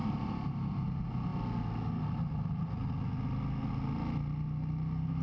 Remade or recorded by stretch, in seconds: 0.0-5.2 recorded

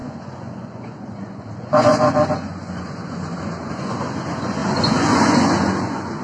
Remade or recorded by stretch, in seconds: 0.0-6.2 remade

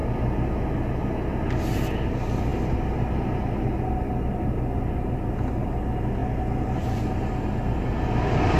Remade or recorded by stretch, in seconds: 0.0-8.6 recorded